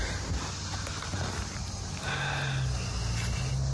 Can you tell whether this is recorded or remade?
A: recorded